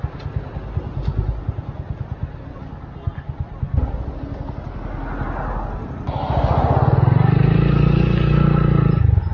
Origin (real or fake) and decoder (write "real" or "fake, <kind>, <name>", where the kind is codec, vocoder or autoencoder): real